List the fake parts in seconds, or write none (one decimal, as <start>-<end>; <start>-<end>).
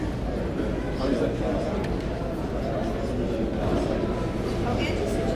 none